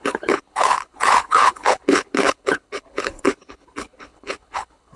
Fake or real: fake